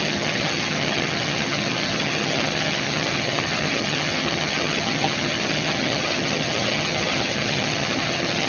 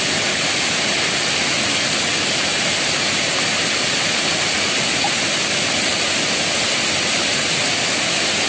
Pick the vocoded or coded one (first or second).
first